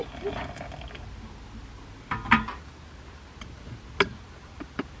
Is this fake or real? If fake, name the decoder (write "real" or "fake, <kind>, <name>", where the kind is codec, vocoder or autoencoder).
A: real